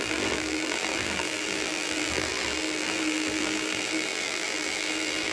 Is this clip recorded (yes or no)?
no